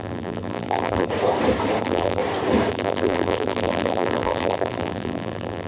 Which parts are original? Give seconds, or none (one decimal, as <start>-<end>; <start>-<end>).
1.1-1.8; 2.2-2.7